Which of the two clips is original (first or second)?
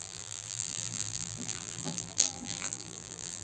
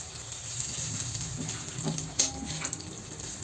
second